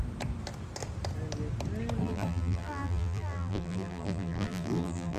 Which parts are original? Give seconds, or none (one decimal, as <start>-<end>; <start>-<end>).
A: 0.0-2.0